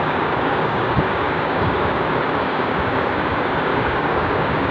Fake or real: fake